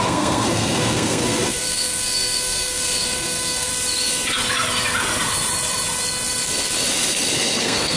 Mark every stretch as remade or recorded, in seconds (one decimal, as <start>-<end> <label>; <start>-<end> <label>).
0.0-3.7 remade; 3.7-7.6 recorded; 7.6-8.0 remade